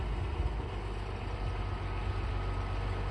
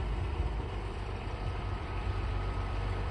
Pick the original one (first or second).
first